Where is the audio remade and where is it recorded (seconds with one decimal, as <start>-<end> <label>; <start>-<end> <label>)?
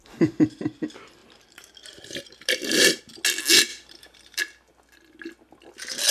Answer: 0.0-1.2 recorded; 1.2-3.0 remade; 3.0-3.7 recorded; 3.7-4.4 remade; 4.4-6.1 recorded